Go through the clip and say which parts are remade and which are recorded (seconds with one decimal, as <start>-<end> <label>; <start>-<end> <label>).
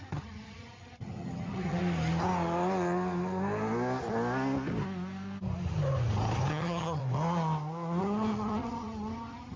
0.0-1.8 remade; 1.8-6.5 recorded; 6.5-7.0 remade; 7.0-8.0 recorded; 8.0-9.6 remade